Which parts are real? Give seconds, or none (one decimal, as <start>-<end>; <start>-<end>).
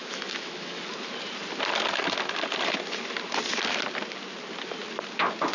0.8-5.5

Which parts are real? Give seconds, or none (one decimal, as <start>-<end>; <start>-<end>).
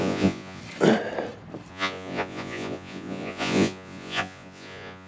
0.6-1.7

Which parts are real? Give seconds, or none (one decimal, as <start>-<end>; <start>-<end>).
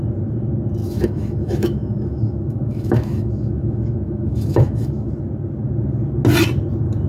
0.0-0.8; 5.1-7.1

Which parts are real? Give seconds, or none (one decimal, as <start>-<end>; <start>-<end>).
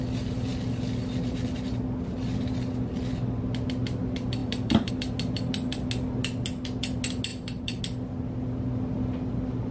0.0-4.4; 4.9-7.3; 7.8-9.7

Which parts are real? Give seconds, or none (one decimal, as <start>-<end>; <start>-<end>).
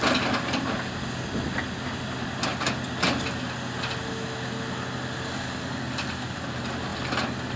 0.0-7.6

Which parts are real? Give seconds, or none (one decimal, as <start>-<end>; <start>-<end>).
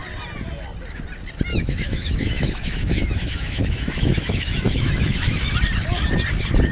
0.0-1.5; 5.5-6.7